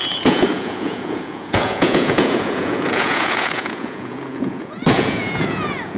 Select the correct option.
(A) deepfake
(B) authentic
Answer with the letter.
A